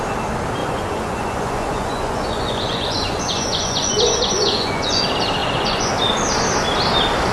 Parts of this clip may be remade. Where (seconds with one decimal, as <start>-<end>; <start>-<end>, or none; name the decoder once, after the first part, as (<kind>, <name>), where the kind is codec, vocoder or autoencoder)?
0.6-5.0 (vocoder, Vocos); 5.4-5.9